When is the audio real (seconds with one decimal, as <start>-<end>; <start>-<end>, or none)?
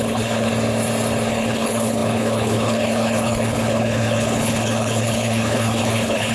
0.5-1.3